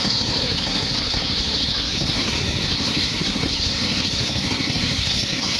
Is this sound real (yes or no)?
no